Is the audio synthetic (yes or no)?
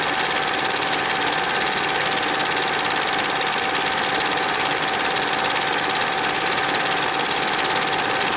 no